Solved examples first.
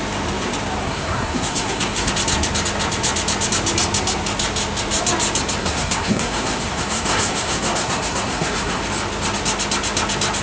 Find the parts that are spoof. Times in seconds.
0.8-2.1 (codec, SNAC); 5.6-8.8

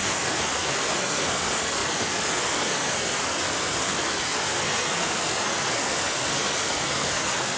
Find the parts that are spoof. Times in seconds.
0.0-7.6 (codec, SNAC)

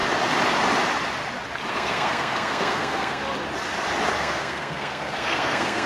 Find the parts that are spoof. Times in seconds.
1.7-3.2 (codec, SNAC); 4.2-5.9